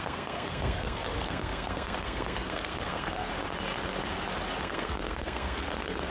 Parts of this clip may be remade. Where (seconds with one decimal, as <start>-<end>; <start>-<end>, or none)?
0.0-3.3; 4.6-6.1